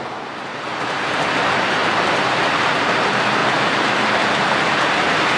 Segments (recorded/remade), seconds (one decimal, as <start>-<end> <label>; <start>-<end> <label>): 0.0-1.8 recorded; 1.8-3.0 remade; 3.0-3.4 recorded; 3.4-4.1 remade; 4.1-5.4 recorded